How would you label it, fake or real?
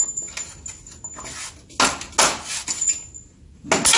real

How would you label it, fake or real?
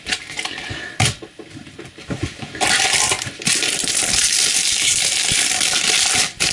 fake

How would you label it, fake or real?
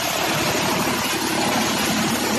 real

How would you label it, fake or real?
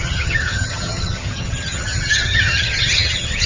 fake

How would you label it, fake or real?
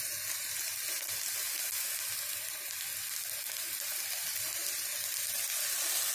real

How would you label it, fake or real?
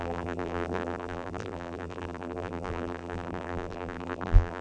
fake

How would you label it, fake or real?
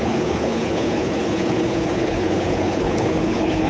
fake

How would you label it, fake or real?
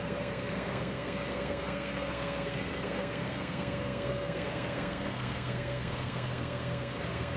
fake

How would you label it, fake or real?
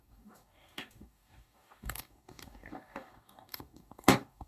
fake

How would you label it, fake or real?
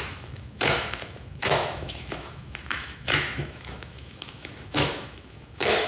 fake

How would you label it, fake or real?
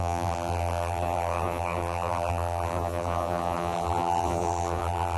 fake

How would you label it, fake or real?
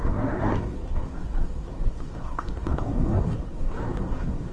fake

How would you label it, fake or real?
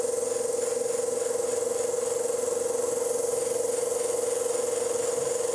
real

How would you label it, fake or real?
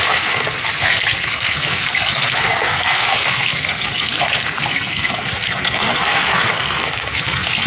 fake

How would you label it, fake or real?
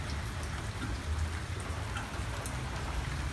real